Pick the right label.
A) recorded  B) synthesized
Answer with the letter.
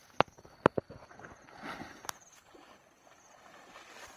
A